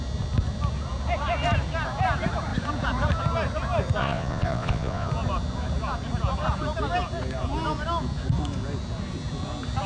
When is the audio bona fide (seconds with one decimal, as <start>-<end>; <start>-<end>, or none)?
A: 0.0-4.0; 5.1-9.9